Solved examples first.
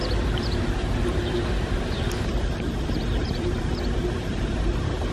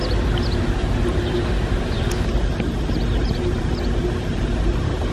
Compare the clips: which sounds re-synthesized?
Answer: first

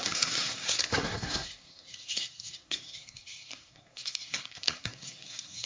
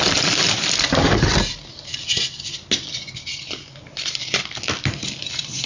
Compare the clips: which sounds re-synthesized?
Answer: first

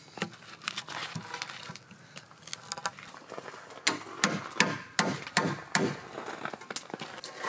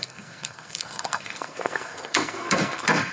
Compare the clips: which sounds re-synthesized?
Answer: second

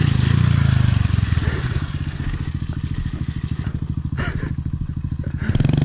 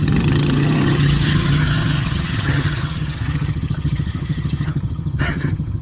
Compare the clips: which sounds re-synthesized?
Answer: second